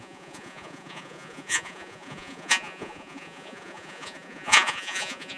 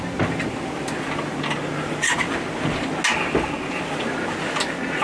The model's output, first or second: first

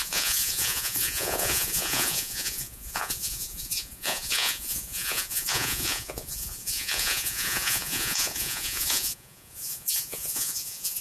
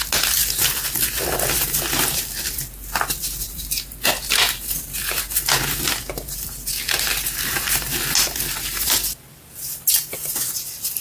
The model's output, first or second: first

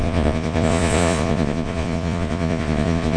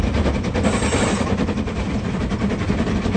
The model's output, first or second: first